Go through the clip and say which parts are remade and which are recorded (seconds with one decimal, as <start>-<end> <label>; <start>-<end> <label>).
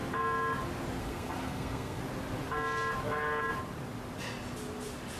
0.0-1.0 recorded; 1.0-2.0 remade; 2.0-5.2 recorded